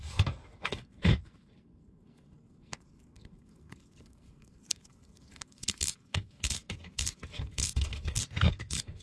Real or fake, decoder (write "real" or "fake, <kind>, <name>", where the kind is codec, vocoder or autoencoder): fake, codec, SNAC